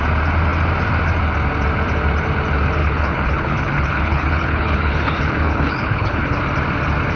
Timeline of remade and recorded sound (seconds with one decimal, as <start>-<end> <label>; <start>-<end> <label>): 0.0-2.8 recorded; 2.8-6.4 remade; 6.4-7.2 recorded